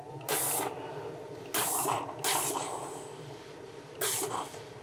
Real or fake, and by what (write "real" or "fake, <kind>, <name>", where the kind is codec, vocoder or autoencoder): real